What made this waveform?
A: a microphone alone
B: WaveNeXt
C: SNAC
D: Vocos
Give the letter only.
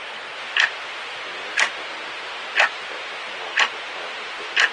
A